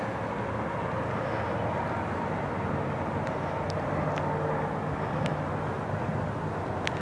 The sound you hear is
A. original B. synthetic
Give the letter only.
A